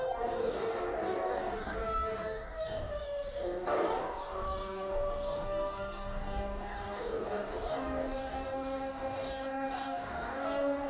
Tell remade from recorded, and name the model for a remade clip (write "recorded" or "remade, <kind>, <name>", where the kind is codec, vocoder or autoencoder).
remade, codec, DAC